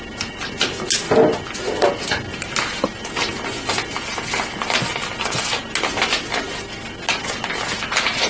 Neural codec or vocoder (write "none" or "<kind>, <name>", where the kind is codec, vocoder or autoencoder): none